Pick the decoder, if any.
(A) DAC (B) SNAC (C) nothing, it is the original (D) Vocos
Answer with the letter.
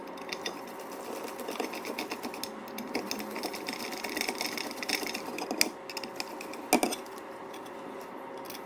C